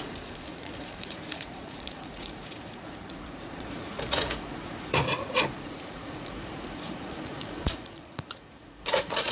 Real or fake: fake